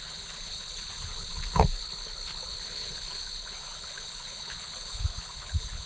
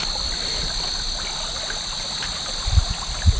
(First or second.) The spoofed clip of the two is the first